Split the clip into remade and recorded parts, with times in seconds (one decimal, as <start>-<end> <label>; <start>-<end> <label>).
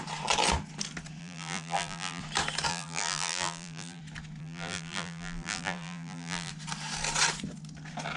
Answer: 0.0-1.2 recorded; 1.2-2.2 remade; 2.2-2.7 recorded; 2.7-4.0 remade; 4.0-4.4 recorded; 4.4-6.5 remade; 6.5-8.2 recorded